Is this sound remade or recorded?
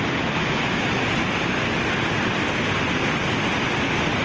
recorded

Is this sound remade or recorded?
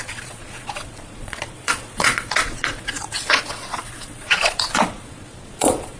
remade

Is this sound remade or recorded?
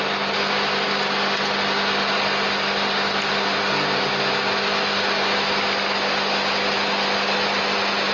recorded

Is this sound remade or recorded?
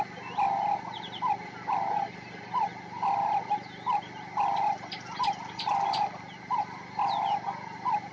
recorded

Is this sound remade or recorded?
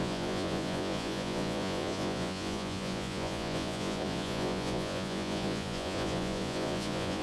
remade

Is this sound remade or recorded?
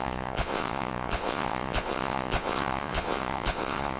remade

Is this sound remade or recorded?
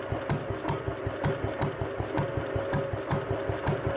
recorded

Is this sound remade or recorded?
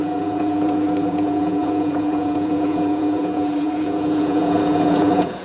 remade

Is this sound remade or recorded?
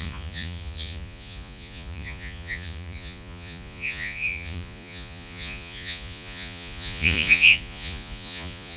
remade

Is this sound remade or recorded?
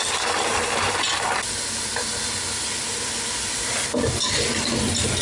recorded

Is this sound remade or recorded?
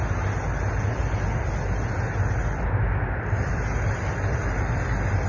recorded